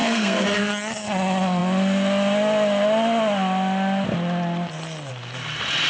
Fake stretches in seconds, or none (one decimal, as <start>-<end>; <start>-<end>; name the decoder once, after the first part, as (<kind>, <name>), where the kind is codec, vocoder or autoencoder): 0.0-0.7 (codec, SNAC)